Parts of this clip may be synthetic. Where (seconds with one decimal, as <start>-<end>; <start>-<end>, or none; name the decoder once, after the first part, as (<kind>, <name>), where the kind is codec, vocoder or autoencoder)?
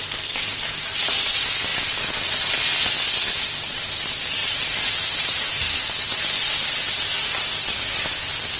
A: 4.4-6.0 (vocoder, BigVGAN v2)